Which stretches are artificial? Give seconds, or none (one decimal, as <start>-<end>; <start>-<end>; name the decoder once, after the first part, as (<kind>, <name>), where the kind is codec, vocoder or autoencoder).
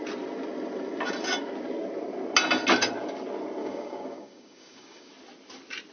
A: 3.6-5.1 (codec, DAC)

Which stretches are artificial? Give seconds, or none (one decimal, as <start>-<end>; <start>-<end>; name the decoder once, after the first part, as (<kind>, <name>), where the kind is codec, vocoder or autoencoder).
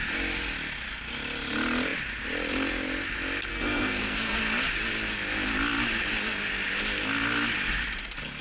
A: 3.5-4.4 (codec, SNAC)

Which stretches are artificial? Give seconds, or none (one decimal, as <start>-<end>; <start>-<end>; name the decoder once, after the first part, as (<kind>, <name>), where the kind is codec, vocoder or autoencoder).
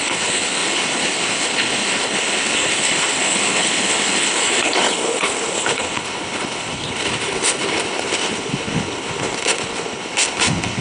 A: 0.0-10.8 (codec, HILCodec)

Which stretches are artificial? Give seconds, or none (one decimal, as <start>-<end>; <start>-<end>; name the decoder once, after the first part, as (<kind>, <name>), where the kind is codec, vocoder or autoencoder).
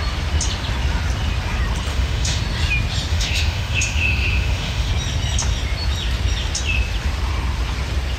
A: 1.9-2.4 (autoencoder, DAC-VAE); 3.1-4.9